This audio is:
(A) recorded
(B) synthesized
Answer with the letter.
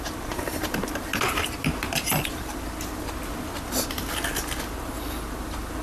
A